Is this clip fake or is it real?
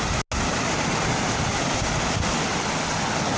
real